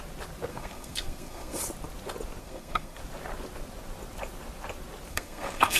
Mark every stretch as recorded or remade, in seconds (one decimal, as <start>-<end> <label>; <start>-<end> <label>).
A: 0.0-0.5 recorded; 0.5-1.6 remade; 1.6-2.4 recorded; 2.4-3.0 remade; 3.0-5.1 recorded; 5.1-5.8 remade